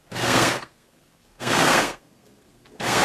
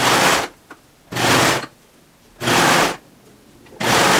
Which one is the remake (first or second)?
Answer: first